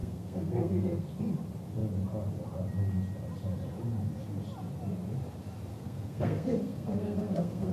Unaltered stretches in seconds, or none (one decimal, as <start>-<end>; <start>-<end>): 1.1-5.7